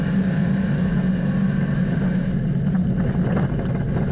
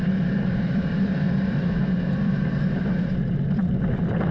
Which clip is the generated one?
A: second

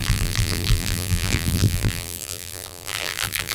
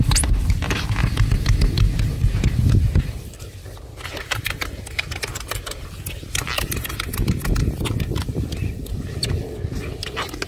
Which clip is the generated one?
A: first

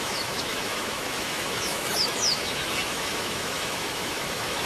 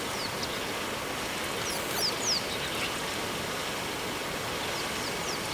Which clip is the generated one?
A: first